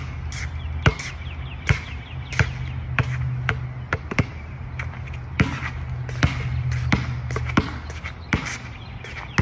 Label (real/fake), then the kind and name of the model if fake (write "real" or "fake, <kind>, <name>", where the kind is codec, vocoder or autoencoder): real